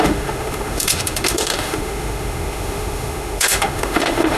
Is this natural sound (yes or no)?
no